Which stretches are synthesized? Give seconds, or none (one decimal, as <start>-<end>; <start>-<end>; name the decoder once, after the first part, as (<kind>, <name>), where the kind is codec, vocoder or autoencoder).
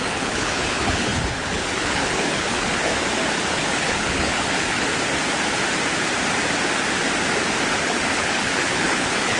0.0-2.9 (codec, HILCodec); 3.5-4.9; 7.8-9.4